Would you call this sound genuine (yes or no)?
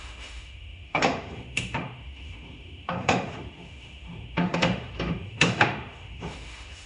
no